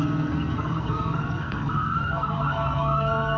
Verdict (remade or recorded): remade